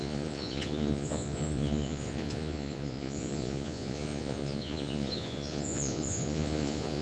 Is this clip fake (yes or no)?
yes